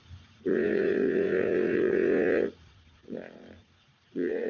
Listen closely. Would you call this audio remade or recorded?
remade